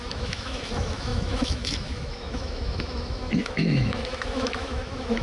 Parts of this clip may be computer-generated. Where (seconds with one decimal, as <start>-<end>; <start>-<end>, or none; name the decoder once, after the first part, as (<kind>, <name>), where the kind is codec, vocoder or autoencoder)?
0.0-5.2 (autoencoder, DAC-VAE)